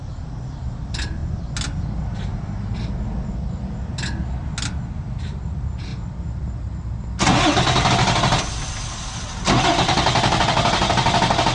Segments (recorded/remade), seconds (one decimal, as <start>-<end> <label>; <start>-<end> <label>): 0.0-11.5 recorded